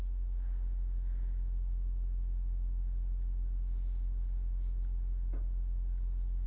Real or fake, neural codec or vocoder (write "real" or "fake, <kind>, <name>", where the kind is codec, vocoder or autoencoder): real